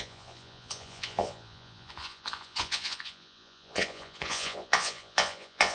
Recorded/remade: remade